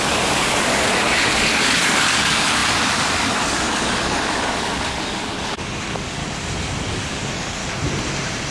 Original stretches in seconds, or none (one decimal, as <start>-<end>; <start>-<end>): 6.2-6.9; 7.6-8.5